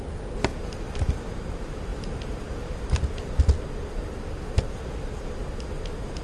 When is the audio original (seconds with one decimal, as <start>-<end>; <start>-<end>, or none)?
0.0-6.2